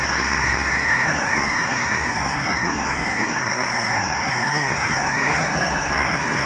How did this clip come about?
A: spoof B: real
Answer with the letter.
A